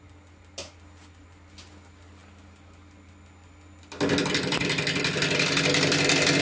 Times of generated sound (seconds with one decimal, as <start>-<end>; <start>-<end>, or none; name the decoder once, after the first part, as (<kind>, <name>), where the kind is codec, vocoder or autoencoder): none